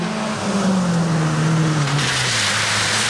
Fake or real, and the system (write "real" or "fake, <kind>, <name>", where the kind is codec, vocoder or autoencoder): real